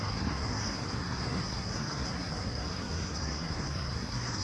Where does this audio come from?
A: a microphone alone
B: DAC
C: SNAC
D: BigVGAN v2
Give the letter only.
C